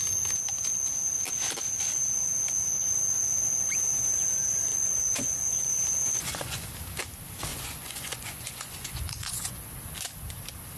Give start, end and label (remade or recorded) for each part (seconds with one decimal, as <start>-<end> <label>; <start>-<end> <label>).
0.0-4.7 recorded; 4.7-6.7 remade; 6.7-7.5 recorded; 7.5-9.7 remade; 9.7-10.8 recorded